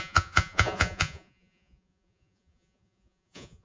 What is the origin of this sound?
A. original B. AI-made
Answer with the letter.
B